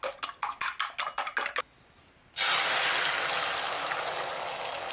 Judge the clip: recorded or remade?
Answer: recorded